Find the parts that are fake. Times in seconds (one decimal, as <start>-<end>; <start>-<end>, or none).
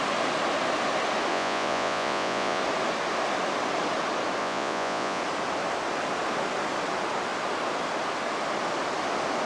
1.3-2.6; 4.4-5.2